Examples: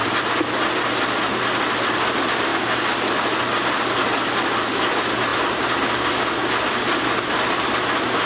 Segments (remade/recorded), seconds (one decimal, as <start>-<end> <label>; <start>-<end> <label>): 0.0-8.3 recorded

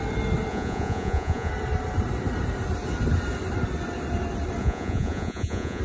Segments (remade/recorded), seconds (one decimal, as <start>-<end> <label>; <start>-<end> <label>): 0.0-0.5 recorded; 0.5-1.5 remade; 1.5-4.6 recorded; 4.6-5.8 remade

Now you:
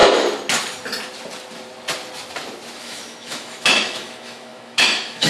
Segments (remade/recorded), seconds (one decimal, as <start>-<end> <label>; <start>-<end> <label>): 0.0-2.8 recorded; 2.8-5.3 remade

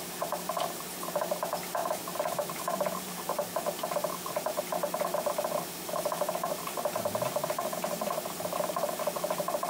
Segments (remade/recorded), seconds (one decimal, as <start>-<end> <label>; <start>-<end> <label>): 0.0-9.7 recorded